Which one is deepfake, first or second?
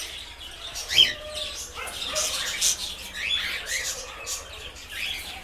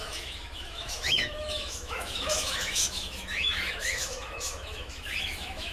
second